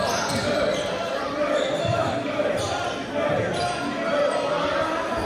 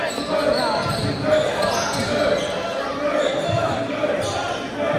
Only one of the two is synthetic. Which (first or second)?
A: first